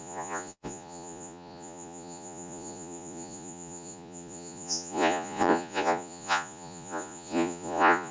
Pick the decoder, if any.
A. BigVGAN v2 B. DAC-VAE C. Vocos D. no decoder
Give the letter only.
C